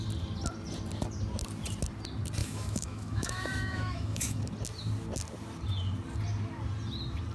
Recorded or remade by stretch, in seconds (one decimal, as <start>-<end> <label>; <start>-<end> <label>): 0.0-2.4 recorded; 2.4-4.4 remade; 4.4-7.3 recorded